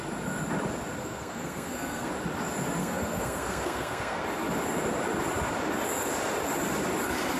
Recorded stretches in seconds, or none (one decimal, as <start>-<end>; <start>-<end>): 0.0-1.0; 2.1-2.8; 4.2-7.4